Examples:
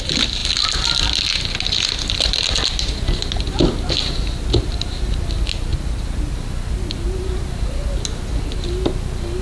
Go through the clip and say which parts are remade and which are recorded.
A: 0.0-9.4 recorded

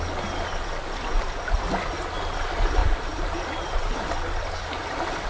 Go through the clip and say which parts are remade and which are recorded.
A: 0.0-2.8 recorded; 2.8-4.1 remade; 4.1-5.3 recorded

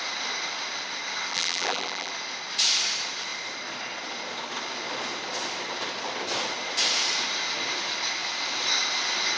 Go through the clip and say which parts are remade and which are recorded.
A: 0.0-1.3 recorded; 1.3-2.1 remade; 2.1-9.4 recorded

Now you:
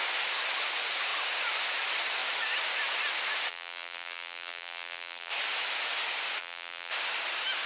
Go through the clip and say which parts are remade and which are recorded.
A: 0.0-3.5 recorded; 3.5-5.3 remade; 5.3-6.4 recorded; 6.4-6.9 remade; 6.9-7.7 recorded

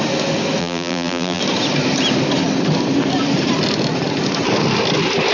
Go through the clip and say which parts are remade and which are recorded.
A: 0.0-0.6 recorded; 0.6-1.4 remade; 1.4-5.3 recorded